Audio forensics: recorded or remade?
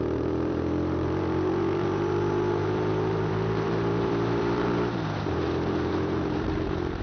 remade